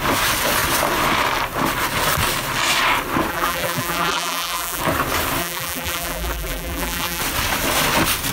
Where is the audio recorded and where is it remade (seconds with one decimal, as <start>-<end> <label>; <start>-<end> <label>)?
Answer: 0.0-3.3 recorded; 3.3-4.8 remade; 4.8-5.4 recorded; 5.4-7.2 remade; 7.2-8.3 recorded